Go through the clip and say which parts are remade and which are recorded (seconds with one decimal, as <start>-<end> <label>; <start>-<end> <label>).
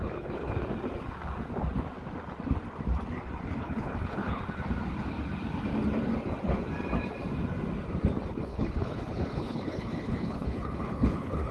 0.0-0.5 remade; 0.5-3.6 recorded; 3.6-4.4 remade; 4.4-8.3 recorded; 8.3-11.5 remade